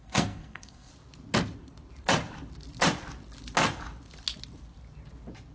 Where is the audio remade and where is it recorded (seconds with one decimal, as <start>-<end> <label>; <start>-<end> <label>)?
0.0-0.9 remade; 0.9-5.5 recorded